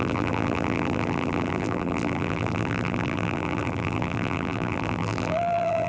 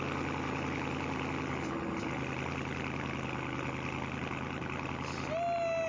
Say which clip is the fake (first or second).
first